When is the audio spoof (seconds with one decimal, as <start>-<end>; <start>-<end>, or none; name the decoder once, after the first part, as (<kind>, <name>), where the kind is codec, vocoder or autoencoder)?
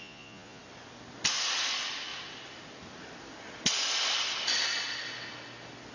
0.0-0.6 (vocoder, Vocos)